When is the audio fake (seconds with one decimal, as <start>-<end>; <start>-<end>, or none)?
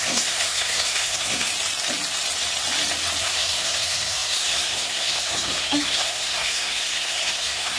0.0-1.5; 3.2-7.8